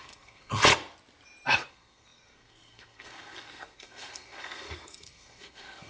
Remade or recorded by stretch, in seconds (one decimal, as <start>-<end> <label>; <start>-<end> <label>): 0.0-0.6 remade; 0.6-1.7 recorded; 1.7-5.9 remade